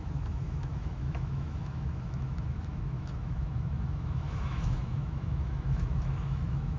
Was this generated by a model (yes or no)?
yes